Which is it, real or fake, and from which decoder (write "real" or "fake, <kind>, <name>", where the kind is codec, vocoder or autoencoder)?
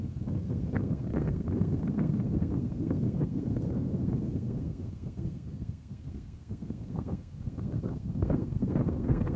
fake, codec, SNAC